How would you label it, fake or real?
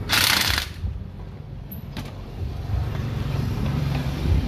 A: fake